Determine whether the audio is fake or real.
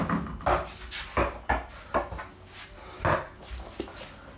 real